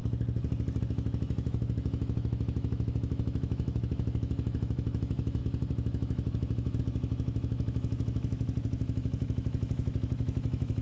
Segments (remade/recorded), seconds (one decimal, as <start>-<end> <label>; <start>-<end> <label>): 0.0-0.8 recorded; 0.8-10.8 remade